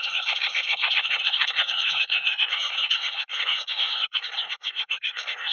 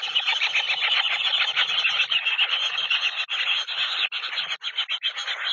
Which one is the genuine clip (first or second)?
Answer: second